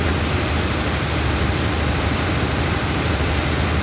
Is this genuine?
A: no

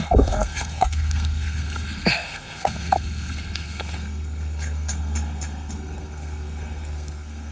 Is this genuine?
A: no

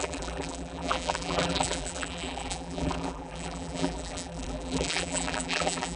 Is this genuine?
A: no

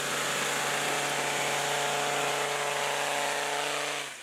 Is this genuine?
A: yes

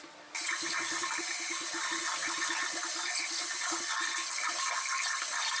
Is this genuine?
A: yes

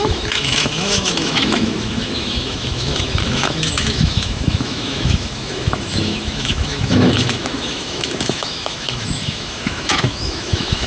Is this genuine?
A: no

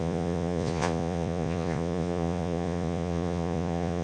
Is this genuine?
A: no